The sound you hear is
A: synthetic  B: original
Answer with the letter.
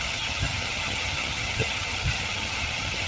A